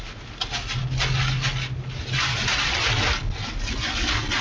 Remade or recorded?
recorded